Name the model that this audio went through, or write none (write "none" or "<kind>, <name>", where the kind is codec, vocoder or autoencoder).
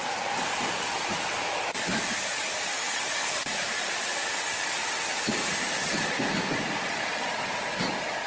none